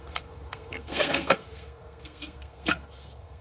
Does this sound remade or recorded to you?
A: remade